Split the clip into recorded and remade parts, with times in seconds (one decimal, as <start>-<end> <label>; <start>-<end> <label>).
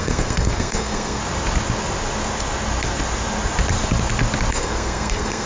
0.0-1.2 remade; 1.2-4.5 recorded; 4.5-5.5 remade